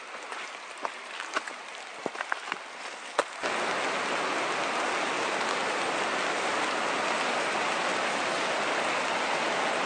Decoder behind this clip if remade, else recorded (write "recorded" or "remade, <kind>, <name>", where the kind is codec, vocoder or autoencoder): recorded